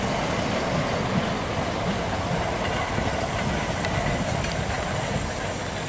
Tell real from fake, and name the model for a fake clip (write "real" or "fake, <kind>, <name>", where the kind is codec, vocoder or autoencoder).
real